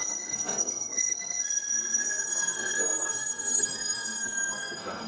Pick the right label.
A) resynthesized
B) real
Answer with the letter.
A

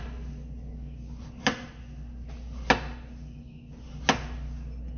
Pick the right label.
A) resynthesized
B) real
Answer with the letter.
B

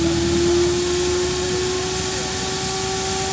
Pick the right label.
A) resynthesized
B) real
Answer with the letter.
B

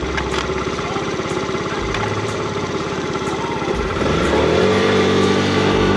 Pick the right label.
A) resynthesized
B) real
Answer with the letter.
A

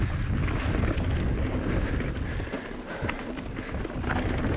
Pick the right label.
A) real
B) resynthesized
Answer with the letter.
A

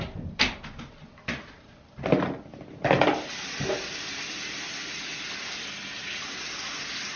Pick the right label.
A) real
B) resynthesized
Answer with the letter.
A